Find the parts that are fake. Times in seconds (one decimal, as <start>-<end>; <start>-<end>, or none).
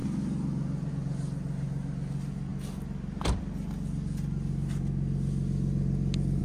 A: none